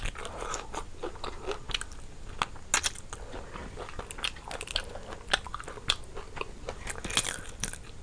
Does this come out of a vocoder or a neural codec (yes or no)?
no